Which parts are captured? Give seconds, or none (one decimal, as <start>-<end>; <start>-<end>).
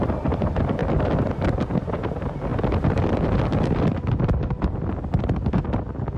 0.8-1.5; 2.5-6.2